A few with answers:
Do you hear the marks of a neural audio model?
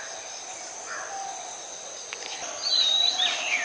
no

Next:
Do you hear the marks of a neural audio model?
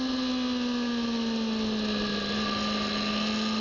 no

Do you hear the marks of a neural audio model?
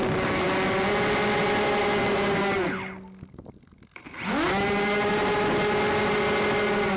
no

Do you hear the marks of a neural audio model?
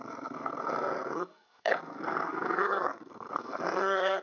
yes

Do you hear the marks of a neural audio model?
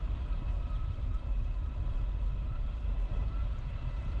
yes